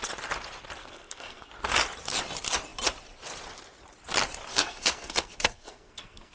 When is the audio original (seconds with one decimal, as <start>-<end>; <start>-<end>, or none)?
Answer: 0.0-0.8; 1.5-4.5